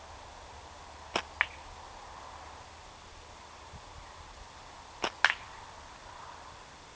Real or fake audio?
real